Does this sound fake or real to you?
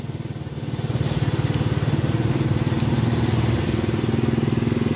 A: real